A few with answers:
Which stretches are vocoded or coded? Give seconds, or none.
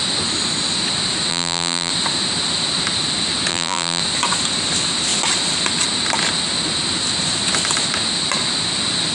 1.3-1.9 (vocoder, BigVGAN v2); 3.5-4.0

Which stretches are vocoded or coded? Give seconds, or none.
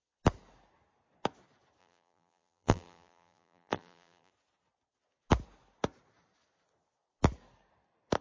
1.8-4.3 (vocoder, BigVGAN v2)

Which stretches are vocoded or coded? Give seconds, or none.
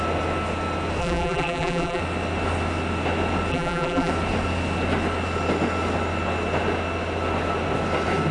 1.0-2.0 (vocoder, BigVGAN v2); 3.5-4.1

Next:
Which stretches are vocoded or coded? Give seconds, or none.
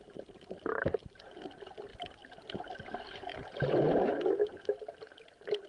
none